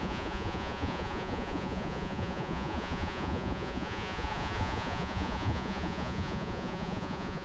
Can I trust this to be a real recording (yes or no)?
no